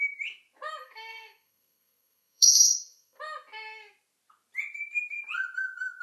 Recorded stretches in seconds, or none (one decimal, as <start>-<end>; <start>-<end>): 0.0-0.8; 3.2-6.0

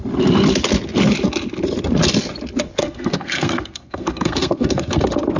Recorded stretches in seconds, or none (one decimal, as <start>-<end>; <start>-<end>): 0.0-2.8; 5.0-5.4